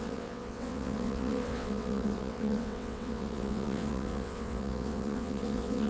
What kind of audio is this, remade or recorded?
remade